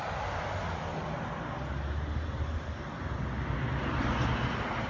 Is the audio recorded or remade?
recorded